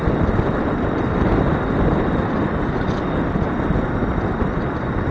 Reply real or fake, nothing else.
real